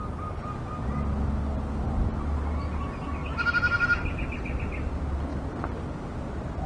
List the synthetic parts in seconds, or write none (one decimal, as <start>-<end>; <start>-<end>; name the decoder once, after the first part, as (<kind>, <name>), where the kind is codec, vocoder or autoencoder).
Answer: none